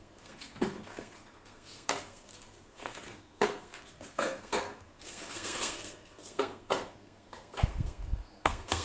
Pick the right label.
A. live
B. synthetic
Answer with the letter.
B